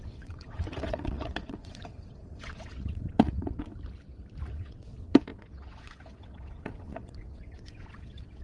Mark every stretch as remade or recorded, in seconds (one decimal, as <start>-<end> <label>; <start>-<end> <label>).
0.0-3.7 remade; 3.7-4.5 recorded; 4.5-8.4 remade